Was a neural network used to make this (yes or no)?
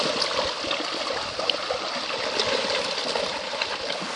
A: no